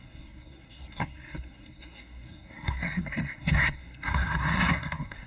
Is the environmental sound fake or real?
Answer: fake